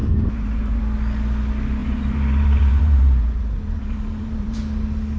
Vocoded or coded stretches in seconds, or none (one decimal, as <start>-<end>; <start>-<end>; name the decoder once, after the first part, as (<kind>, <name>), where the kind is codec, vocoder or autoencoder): 0.0-0.8 (vocoder, BigVGAN v2); 1.8-4.6